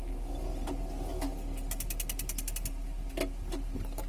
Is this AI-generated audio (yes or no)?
no